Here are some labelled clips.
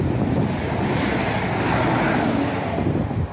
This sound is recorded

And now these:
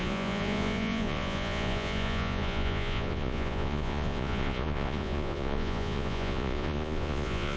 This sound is remade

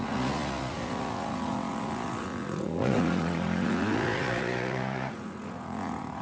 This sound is remade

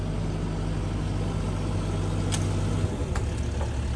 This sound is recorded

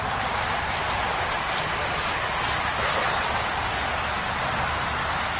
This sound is recorded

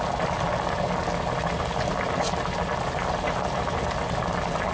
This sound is recorded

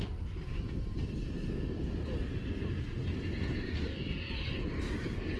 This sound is recorded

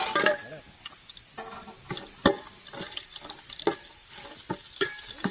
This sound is recorded